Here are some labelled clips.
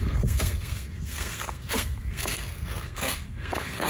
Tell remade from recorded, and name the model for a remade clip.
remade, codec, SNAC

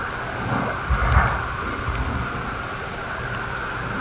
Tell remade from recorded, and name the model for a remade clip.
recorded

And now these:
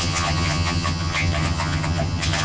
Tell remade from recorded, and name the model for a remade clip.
remade, vocoder, HiFi-GAN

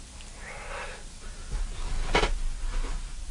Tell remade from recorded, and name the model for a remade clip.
recorded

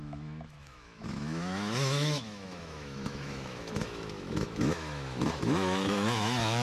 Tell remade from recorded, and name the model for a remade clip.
remade, autoencoder, DAC-VAE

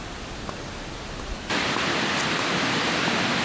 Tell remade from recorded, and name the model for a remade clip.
recorded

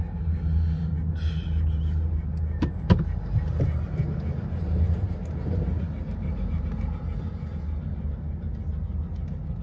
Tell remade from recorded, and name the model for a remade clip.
recorded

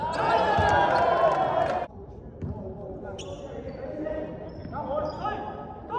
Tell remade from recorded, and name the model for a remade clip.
recorded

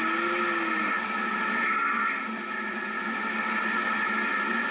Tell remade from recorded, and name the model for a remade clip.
recorded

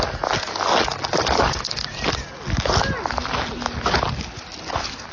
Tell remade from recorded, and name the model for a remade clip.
recorded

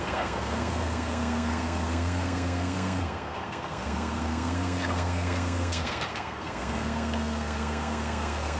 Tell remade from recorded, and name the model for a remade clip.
remade, codec, SNAC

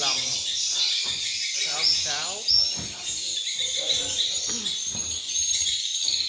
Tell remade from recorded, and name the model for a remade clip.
recorded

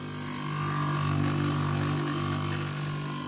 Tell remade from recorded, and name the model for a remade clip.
recorded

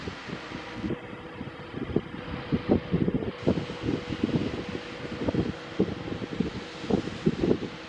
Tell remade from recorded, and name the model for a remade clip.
recorded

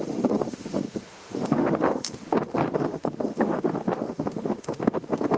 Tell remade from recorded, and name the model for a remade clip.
remade, autoencoder, DAC-VAE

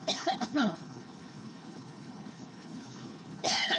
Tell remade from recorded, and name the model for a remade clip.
remade, codec, HILCodec